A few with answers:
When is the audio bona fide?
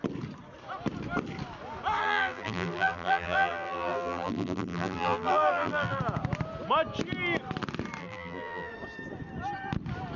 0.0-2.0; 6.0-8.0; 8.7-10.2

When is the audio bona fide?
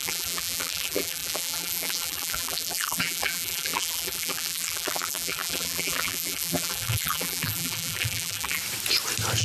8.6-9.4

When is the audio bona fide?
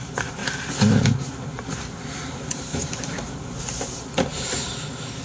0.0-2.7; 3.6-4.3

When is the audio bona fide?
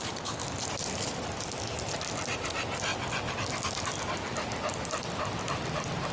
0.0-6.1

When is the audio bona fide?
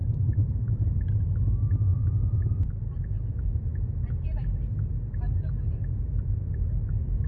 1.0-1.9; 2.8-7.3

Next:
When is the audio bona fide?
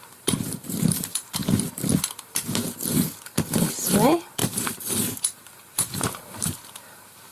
1.4-2.1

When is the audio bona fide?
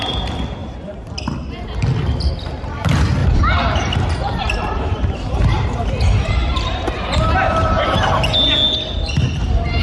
0.0-0.6; 1.1-3.2; 5.9-6.4; 8.1-9.2